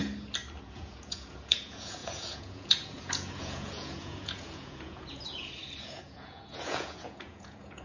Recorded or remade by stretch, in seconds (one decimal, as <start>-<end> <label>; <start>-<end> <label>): 0.0-0.6 recorded; 0.6-7.8 remade